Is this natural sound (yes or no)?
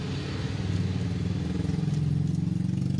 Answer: yes